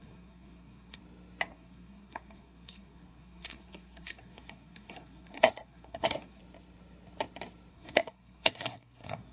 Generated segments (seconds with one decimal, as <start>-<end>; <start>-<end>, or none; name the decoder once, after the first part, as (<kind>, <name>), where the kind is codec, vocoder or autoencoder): 0.0-1.0 (codec, SNAC); 1.5-6.4; 7.7-9.3